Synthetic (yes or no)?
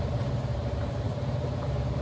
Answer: yes